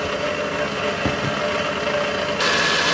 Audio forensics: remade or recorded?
recorded